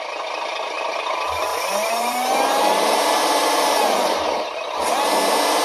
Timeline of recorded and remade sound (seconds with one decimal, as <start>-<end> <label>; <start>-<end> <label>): 0.0-1.5 recorded; 1.5-4.7 remade; 4.7-5.6 recorded